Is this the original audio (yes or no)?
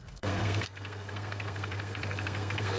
no